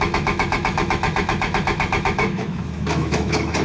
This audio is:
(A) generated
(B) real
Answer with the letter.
A